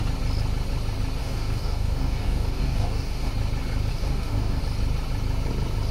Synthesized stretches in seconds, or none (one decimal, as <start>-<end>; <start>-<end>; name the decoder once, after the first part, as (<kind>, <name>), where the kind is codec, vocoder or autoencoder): 1.2-3.3 (codec, DAC); 3.9-4.6